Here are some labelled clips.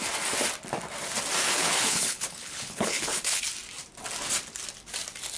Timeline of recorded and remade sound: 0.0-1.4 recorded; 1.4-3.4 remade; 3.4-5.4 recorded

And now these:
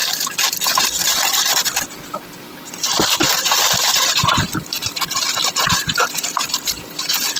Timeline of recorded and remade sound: 0.0-3.3 recorded; 3.3-4.3 remade; 4.3-4.8 recorded; 4.8-5.5 remade; 5.5-7.4 recorded